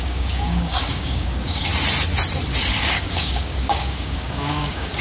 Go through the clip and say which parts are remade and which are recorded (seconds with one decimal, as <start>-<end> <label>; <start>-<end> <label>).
0.0-1.7 remade; 1.7-2.7 recorded; 2.7-5.0 remade